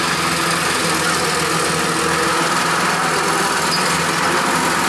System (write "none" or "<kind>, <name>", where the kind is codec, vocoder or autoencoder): none